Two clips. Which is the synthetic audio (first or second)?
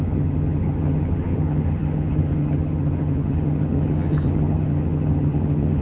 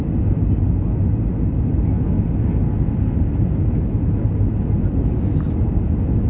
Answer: first